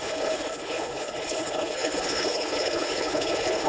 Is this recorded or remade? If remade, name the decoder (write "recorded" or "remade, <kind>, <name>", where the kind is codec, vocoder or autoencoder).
remade, codec, HILCodec